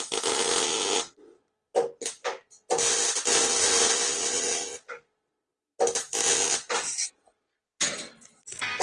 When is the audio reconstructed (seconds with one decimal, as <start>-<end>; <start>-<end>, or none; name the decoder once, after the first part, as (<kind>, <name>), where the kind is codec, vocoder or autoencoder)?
none